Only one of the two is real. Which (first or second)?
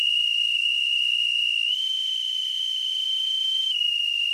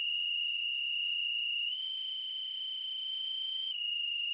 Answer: second